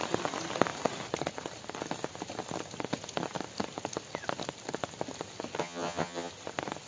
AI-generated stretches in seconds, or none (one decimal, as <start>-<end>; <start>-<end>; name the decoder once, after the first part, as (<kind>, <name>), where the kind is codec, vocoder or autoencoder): 5.6-6.3 (vocoder, HiFi-GAN)